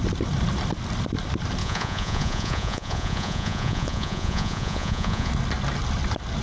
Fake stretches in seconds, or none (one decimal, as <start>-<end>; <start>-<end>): 1.6-5.3